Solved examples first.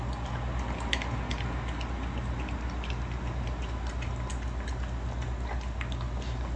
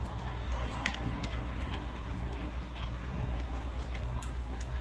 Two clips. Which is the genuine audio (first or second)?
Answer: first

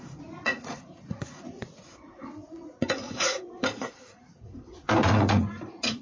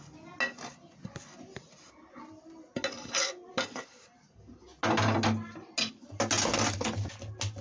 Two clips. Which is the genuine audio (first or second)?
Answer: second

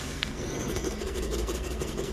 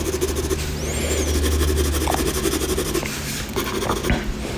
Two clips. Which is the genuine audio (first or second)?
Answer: second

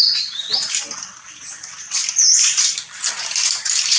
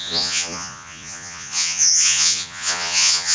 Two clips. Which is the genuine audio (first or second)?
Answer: first